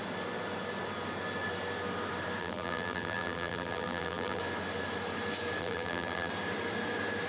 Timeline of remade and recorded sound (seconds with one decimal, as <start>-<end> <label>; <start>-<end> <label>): 0.0-2.4 recorded; 2.4-4.4 remade; 4.4-5.6 recorded; 5.6-6.3 remade; 6.3-7.3 recorded